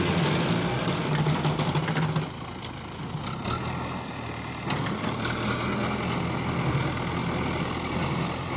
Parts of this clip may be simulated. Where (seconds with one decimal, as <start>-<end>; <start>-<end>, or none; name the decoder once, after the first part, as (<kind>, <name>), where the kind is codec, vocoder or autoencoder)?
none

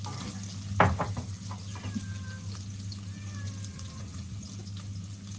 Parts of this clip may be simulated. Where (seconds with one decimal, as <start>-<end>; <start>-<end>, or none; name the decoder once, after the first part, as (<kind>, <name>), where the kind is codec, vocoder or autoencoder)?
3.7-4.5 (vocoder, Vocos)

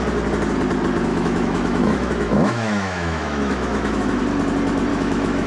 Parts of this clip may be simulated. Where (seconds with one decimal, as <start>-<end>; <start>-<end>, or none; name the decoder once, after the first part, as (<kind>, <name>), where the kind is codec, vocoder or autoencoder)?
1.1-4.2 (autoencoder, DAC-VAE); 4.9-5.5

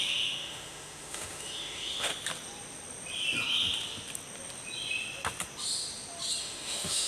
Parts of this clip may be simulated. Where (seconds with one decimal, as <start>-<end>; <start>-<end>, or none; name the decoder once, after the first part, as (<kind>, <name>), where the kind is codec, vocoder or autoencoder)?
0.0-2.1 (autoencoder, DAC-VAE); 6.4-7.1

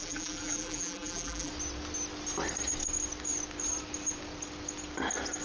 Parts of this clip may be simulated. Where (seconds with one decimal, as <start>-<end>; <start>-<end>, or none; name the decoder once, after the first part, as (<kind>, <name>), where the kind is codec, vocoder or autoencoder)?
0.0-1.5 (vocoder, BigVGAN v2)

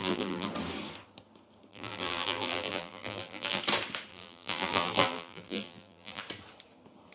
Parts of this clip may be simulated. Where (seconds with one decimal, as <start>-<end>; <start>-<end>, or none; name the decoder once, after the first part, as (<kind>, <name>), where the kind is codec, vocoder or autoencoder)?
0.0-0.5 (vocoder, BigVGAN v2); 1.7-3.6; 4.1-6.2

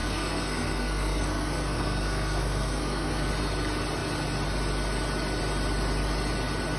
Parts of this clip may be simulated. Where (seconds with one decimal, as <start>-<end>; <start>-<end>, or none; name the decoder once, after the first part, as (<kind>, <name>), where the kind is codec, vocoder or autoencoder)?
0.0-3.3 (codec, SNAC)